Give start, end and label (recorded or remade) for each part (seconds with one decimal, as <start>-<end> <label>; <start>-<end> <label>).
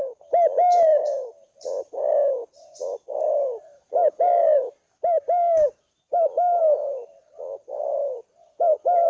0.0-9.1 recorded